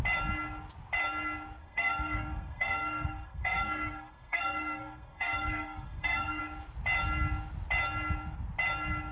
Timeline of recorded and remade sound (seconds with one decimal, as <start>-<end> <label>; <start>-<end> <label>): 0.0-1.6 recorded; 1.6-6.4 remade; 6.4-9.1 recorded